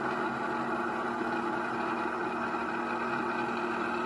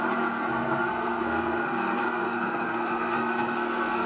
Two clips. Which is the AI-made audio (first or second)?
second